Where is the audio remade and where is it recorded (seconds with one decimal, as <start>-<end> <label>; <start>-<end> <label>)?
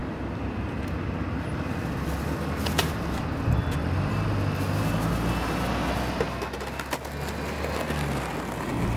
0.0-9.0 recorded